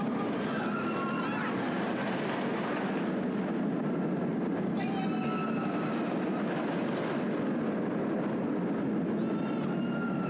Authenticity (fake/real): real